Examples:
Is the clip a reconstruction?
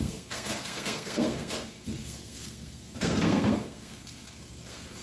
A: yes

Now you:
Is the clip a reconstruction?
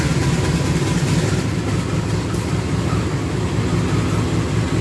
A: no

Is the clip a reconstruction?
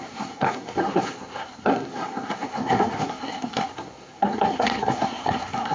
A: yes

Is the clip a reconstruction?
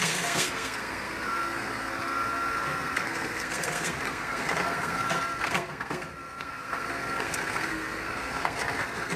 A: yes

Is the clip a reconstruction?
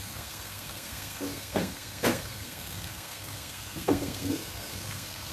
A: yes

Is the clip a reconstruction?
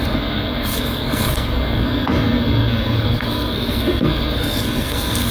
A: yes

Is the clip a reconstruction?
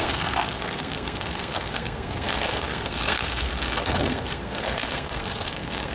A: yes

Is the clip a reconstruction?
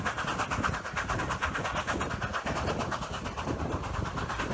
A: no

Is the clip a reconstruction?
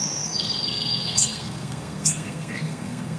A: yes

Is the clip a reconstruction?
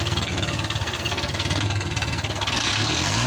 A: yes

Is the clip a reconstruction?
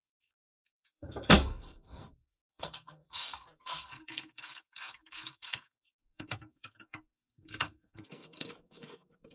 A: yes